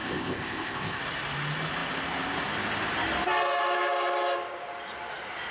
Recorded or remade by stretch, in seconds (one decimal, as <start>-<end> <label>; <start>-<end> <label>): 0.0-1.0 remade; 1.0-5.5 recorded